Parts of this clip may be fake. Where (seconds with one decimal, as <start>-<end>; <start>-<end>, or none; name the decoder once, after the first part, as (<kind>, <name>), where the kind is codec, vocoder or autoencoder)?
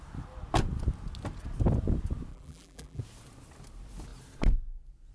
2.3-3.0 (vocoder, BigVGAN v2)